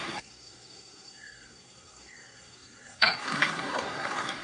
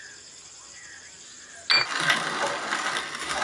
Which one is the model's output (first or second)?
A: first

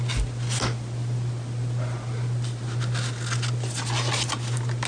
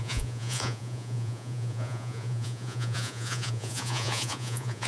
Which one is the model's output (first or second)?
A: second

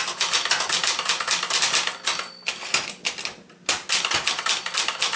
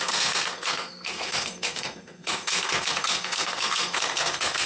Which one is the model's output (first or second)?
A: second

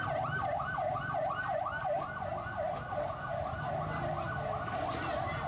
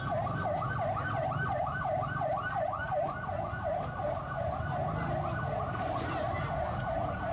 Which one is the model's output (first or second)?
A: second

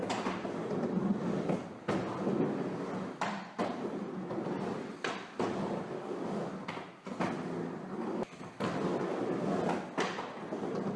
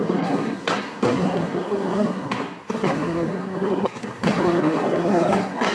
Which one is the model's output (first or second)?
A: second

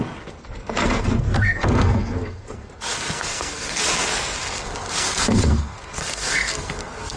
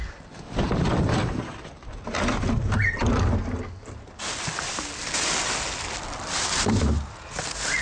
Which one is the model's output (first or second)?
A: first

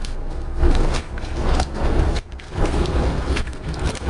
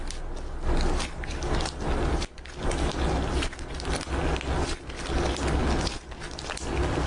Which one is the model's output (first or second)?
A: first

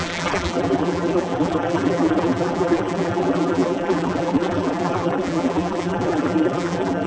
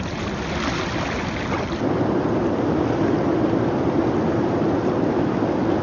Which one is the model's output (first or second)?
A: first